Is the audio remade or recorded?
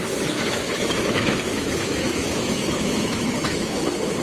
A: remade